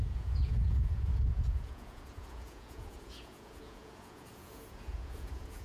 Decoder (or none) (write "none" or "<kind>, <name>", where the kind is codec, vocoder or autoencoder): vocoder, Vocos